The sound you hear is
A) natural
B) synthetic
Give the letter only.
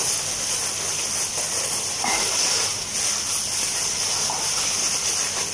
A